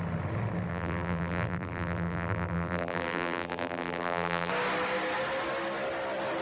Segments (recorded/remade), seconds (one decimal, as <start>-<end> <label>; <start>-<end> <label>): 0.0-0.7 recorded; 0.7-4.5 remade; 4.5-6.4 recorded